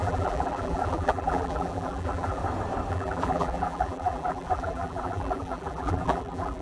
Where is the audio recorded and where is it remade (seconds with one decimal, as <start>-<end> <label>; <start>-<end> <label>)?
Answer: 0.0-2.4 remade; 2.4-2.9 recorded; 2.9-6.6 remade

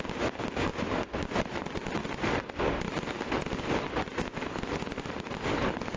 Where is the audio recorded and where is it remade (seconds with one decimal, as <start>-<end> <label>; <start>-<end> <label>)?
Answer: 0.0-6.0 recorded

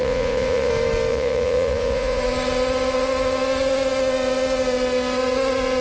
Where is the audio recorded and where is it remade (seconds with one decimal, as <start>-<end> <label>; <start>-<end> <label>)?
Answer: 0.0-0.7 remade; 0.7-1.1 recorded; 1.1-2.2 remade; 2.2-5.8 recorded

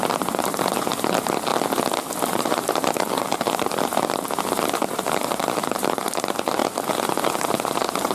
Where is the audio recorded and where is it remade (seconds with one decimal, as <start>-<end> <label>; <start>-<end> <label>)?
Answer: 0.0-1.5 remade; 1.5-2.3 recorded; 2.3-6.6 remade; 6.6-7.3 recorded; 7.3-8.1 remade

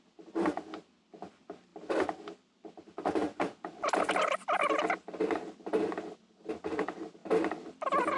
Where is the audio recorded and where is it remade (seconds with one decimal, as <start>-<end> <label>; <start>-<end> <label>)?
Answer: 0.0-7.2 recorded; 7.2-8.2 remade

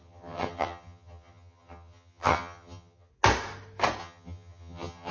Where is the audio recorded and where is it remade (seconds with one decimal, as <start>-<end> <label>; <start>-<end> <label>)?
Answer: 0.0-3.1 remade; 3.1-4.0 recorded; 4.0-5.1 remade

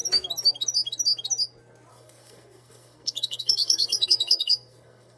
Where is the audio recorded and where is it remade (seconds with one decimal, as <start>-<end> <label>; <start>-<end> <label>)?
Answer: 0.0-1.9 recorded; 1.9-5.2 remade